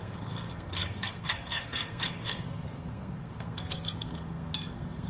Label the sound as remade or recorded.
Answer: remade